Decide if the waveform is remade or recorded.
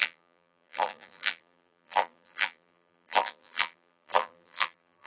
remade